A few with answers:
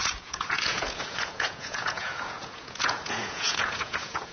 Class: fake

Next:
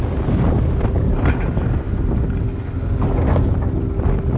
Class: real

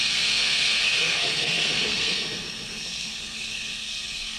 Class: fake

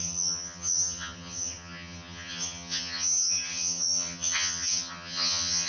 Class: fake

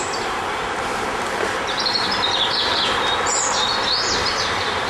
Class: fake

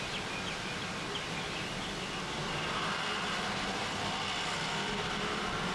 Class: real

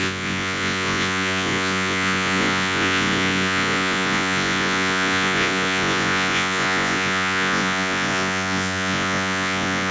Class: fake